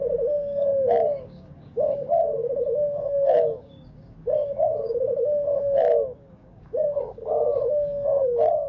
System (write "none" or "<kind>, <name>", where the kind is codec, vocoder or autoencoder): codec, DAC